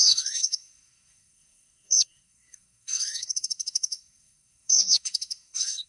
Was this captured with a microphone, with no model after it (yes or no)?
no